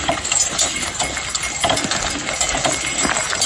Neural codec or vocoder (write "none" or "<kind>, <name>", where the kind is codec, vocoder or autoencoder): none